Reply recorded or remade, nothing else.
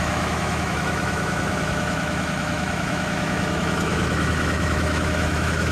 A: remade